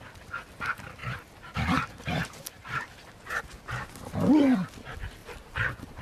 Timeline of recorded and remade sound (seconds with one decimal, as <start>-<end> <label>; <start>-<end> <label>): 0.0-1.0 recorded; 1.0-3.4 remade; 3.4-5.2 recorded; 5.2-6.0 remade